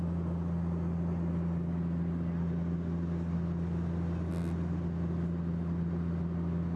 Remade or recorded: recorded